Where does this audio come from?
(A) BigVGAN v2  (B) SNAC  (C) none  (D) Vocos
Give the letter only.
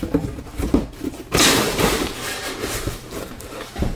A